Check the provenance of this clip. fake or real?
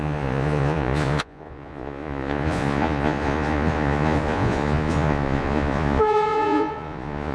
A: fake